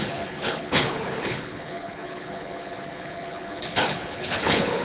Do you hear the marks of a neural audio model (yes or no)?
yes